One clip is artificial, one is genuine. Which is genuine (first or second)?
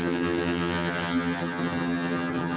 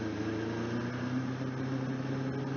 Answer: second